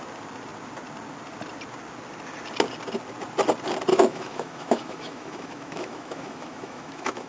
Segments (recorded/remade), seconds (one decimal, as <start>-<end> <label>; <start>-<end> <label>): 0.0-3.9 recorded; 3.9-7.3 remade